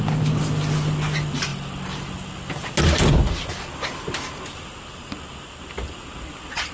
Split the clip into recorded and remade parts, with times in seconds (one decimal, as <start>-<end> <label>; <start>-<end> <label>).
0.0-6.7 recorded